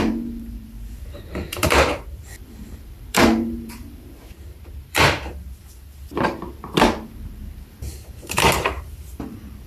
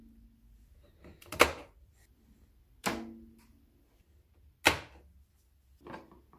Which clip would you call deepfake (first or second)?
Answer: first